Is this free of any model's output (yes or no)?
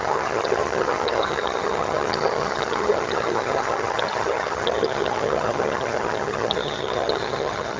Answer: no